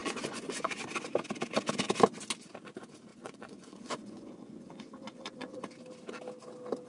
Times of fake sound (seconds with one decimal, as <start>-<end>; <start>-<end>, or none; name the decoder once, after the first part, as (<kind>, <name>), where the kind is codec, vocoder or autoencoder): 0.0-0.8 (vocoder, Vocos); 3.1-5.6